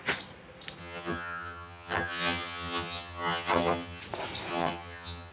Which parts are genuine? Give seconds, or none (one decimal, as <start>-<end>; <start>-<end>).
0.0-0.8; 4.0-4.5